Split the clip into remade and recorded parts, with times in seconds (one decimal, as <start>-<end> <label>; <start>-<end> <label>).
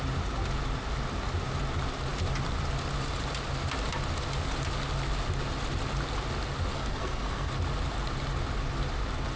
0.0-6.7 recorded; 6.7-7.5 remade; 7.5-9.4 recorded